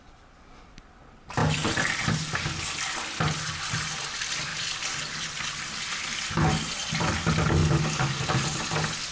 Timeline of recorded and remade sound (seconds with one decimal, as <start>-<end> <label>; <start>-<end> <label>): 0.0-1.4 recorded; 1.4-2.1 remade; 2.1-4.5 recorded; 4.5-5.8 remade; 5.8-9.1 recorded